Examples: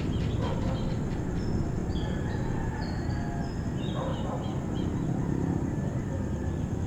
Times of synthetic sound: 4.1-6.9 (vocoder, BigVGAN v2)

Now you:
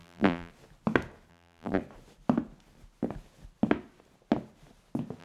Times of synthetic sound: 0.0-0.5 (vocoder, BigVGAN v2); 1.3-1.8

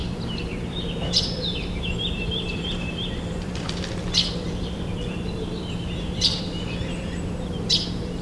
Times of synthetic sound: 0.0-8.2 (vocoder, BigVGAN v2)